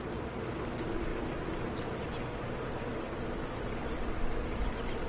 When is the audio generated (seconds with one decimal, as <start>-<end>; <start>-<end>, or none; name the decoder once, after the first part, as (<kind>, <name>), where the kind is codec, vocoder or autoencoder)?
none